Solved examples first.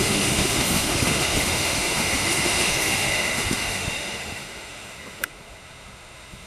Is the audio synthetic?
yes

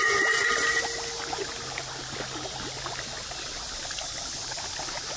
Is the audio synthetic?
no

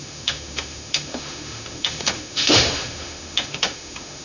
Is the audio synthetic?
yes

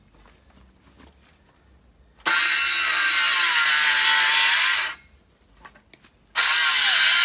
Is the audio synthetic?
no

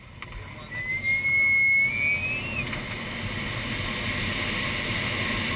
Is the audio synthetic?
no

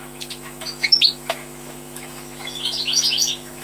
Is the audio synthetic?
yes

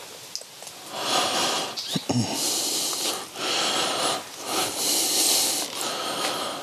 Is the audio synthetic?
no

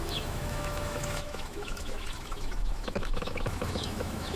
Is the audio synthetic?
yes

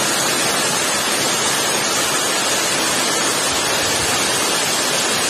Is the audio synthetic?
no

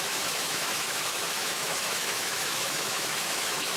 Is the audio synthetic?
yes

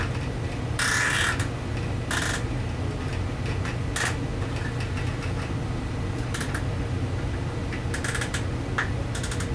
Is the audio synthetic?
no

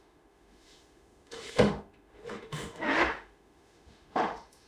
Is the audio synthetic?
yes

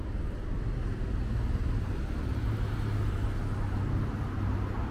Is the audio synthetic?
no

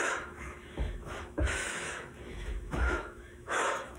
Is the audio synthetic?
yes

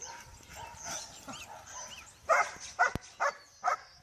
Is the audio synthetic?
no